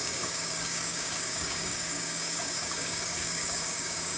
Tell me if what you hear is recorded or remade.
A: remade